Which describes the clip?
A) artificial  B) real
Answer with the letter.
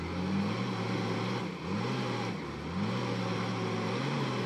B